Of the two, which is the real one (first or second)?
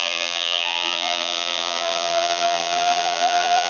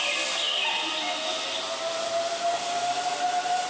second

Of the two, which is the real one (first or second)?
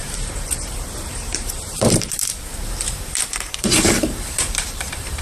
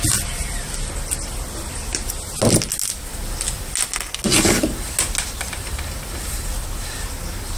second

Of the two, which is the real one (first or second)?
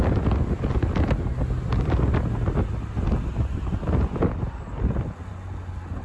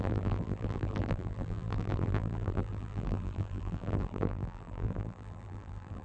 first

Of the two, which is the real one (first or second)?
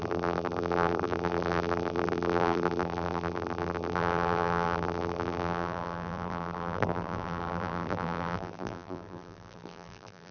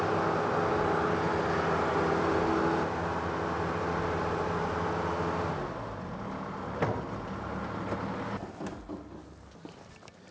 second